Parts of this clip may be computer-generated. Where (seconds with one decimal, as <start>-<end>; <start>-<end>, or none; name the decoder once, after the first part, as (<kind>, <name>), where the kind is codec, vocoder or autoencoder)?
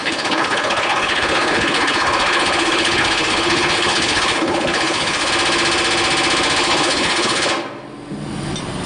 0.0-5.3 (codec, HILCodec); 6.6-7.5